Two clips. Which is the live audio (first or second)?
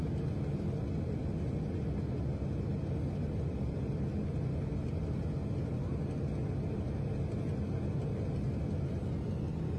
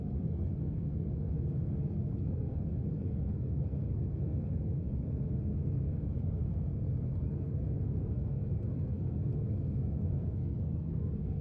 first